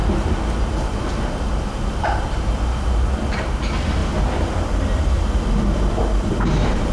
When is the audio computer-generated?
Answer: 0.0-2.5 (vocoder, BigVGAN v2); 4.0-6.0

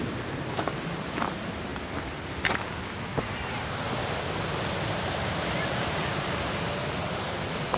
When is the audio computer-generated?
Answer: 0.0-1.7 (vocoder, BigVGAN v2); 5.7-7.8

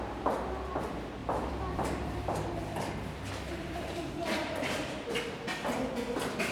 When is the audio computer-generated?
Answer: 1.2-5.1 (vocoder, BigVGAN v2)

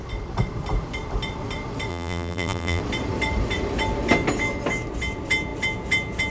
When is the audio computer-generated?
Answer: 1.9-2.8 (vocoder, BigVGAN v2)

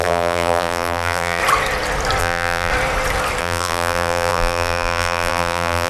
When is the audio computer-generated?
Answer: 0.0-1.4 (vocoder, BigVGAN v2); 2.2-2.7; 3.4-5.9